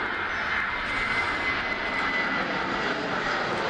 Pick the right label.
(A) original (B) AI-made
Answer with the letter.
A